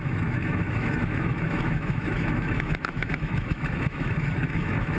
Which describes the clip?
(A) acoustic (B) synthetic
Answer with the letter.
B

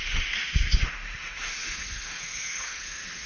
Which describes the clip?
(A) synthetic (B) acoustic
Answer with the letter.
A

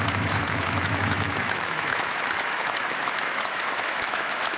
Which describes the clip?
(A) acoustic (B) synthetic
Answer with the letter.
B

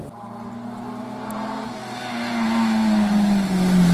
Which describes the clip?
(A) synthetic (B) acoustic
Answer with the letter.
B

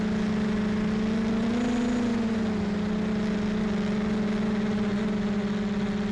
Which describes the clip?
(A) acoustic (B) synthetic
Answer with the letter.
A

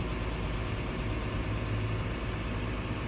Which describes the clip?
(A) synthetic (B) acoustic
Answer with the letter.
B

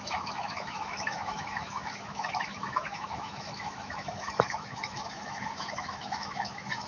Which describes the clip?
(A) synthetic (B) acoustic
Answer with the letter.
A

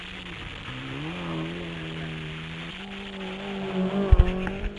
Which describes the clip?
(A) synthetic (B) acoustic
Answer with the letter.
B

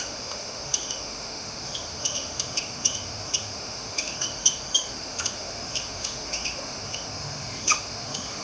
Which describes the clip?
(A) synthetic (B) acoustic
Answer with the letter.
A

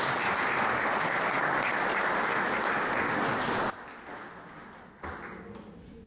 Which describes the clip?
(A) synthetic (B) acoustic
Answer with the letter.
B